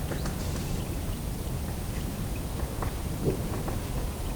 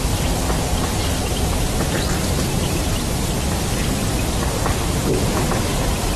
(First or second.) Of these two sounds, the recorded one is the first